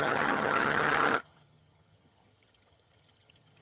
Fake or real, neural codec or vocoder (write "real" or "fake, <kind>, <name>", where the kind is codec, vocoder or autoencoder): fake, vocoder, HiFi-GAN